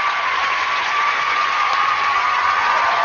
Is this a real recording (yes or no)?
no